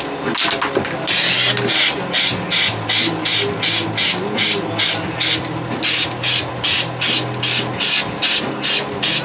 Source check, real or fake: real